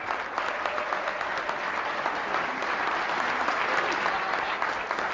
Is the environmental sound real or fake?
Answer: real